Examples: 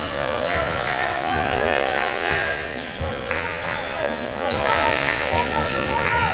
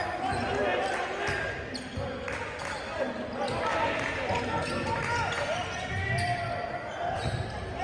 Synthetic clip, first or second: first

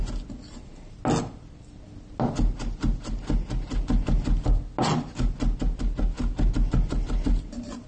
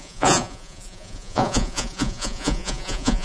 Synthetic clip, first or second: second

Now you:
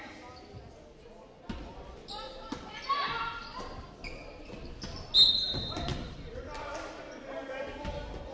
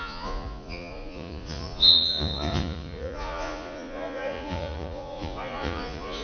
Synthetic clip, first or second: second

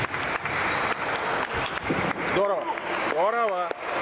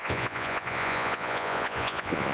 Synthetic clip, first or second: second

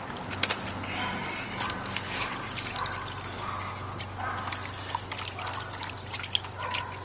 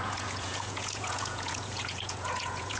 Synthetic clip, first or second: second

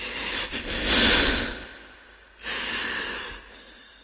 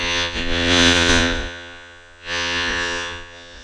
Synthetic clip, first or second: second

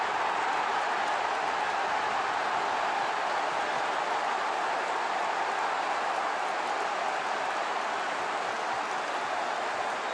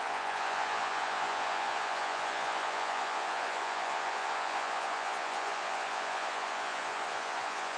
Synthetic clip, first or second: second